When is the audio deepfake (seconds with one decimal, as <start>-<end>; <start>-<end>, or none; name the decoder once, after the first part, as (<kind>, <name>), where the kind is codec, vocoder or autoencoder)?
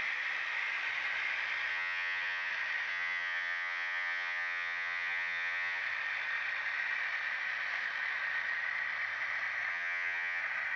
1.7-2.5 (vocoder, HiFi-GAN); 2.9-5.8; 9.7-10.4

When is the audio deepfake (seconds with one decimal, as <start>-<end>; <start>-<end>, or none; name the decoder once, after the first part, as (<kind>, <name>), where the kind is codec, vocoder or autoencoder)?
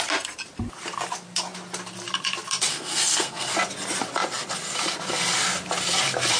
2.7-3.5 (codec, SNAC)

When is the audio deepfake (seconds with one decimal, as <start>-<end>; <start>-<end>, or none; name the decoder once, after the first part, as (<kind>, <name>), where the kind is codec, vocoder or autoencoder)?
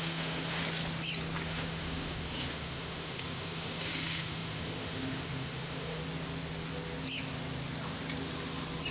0.0-0.6 (autoencoder, DAC-VAE); 1.5-6.0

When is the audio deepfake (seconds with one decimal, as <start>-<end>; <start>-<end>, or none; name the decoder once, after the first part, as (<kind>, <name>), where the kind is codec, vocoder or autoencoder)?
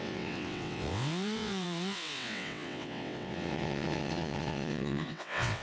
0.0-5.6 (vocoder, WaveNeXt)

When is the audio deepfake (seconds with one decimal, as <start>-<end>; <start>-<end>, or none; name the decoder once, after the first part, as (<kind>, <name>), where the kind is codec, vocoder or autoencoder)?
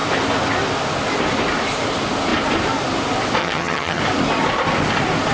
3.4-4.0 (vocoder, HiFi-GAN)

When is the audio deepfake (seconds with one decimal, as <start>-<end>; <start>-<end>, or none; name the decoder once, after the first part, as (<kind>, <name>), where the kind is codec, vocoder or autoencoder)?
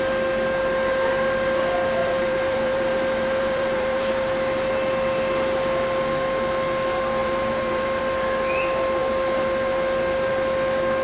2.0-4.1 (vocoder, BigVGAN v2); 7.2-8.0